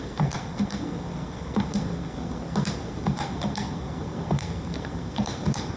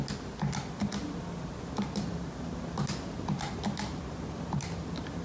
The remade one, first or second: first